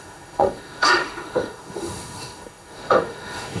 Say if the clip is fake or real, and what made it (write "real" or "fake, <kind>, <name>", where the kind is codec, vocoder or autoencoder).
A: fake, autoencoder, DAC-VAE